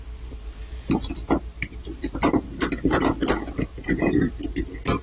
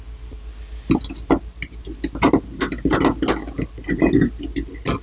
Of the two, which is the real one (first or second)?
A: second